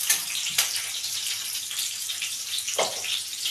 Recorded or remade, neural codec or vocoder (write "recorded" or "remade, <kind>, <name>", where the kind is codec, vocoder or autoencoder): remade, vocoder, BigVGAN v2